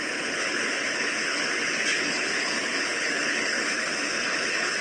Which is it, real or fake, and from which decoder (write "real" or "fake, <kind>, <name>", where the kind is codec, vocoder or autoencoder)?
fake, codec, HILCodec